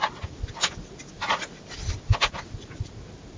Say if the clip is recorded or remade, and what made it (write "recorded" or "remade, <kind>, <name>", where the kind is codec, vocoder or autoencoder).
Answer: recorded